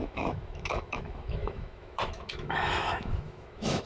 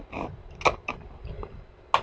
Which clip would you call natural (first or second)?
second